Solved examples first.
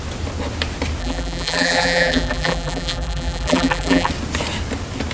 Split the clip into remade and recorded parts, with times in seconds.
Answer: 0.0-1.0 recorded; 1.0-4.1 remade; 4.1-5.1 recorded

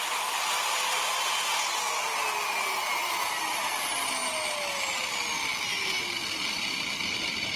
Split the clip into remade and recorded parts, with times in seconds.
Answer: 0.0-3.0 recorded; 3.0-3.7 remade; 3.7-7.6 recorded